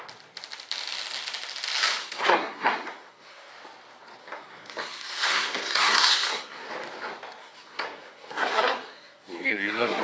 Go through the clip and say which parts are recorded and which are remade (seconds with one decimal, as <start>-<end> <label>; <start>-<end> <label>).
0.0-2.0 recorded; 2.0-3.5 remade; 3.5-4.2 recorded; 4.2-6.7 remade; 6.7-7.4 recorded; 7.4-10.0 remade